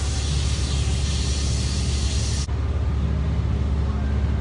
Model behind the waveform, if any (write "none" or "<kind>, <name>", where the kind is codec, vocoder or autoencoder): none